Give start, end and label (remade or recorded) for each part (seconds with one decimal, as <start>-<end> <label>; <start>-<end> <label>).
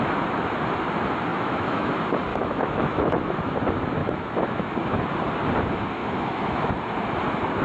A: 0.0-1.3 recorded; 1.3-1.9 remade; 1.9-2.3 recorded; 2.3-3.3 remade; 3.3-4.0 recorded; 4.0-4.7 remade; 4.7-6.0 recorded; 6.0-6.7 remade; 6.7-7.6 recorded